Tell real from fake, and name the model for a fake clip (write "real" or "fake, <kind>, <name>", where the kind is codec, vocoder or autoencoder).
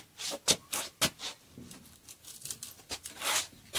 real